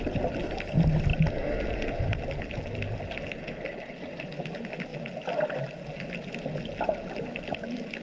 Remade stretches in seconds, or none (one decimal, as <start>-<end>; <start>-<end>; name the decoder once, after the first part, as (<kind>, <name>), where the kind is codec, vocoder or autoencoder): none